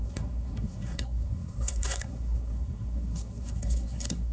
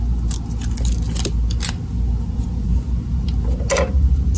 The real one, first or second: second